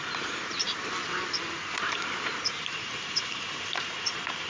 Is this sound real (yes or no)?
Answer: no